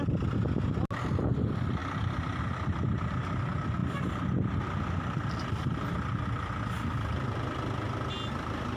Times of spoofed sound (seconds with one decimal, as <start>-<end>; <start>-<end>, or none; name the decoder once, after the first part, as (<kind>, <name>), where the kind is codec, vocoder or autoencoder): none

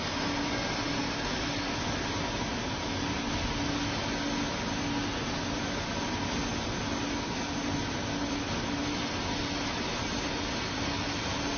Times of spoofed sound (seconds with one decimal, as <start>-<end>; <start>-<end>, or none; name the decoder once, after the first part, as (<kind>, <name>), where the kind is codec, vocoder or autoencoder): 8.8-9.4 (vocoder, BigVGAN v2)

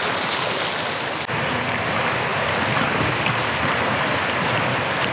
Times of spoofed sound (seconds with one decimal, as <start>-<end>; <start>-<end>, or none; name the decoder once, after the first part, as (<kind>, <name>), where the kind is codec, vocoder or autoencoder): 2.3-3.1 (vocoder, BigVGAN v2)